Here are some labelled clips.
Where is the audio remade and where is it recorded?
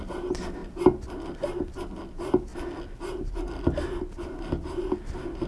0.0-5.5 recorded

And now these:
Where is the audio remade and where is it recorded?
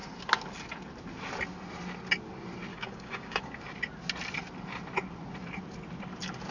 0.0-2.7 recorded; 2.7-3.4 remade; 3.4-6.5 recorded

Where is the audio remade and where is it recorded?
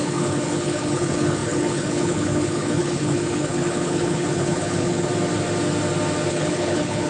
0.0-5.1 remade; 5.1-6.3 recorded; 6.3-7.1 remade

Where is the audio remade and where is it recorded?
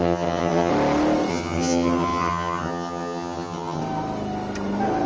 0.0-0.7 remade; 0.7-1.3 recorded; 1.3-3.8 remade; 3.8-5.1 recorded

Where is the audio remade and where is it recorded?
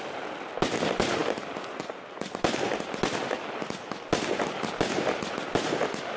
0.0-6.2 recorded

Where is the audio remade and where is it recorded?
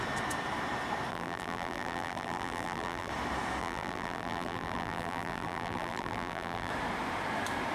0.0-1.1 recorded; 1.1-3.1 remade; 3.1-3.6 recorded; 3.6-6.7 remade; 6.7-7.7 recorded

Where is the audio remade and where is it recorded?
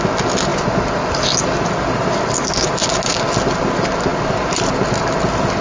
0.0-5.6 recorded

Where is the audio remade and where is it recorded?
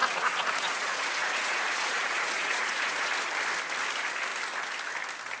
0.0-3.1 remade; 3.1-5.4 recorded